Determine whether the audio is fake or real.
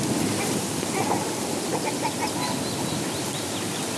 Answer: real